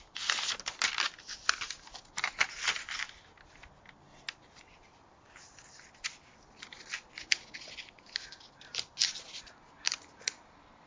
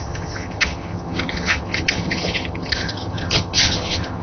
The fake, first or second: second